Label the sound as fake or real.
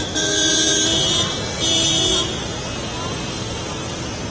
real